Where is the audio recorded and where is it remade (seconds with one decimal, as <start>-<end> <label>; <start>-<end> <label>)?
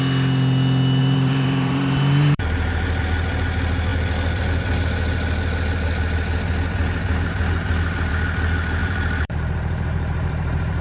0.0-1.0 recorded; 1.0-3.0 remade; 3.0-8.8 recorded; 8.8-10.8 remade